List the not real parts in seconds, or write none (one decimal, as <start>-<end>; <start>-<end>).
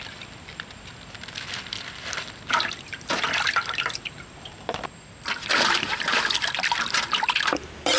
0.0-0.9; 3.1-8.0